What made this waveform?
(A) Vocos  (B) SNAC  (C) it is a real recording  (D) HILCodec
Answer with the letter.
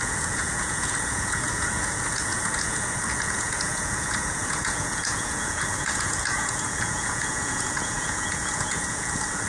A